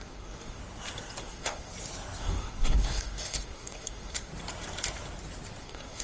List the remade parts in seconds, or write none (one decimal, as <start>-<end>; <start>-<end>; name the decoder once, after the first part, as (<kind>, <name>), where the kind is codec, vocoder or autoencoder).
0.0-0.6 (codec, SNAC); 1.2-1.7; 2.2-4.3; 5.6-6.0